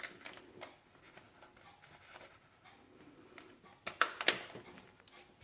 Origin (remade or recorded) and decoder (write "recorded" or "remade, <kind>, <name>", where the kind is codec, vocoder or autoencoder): recorded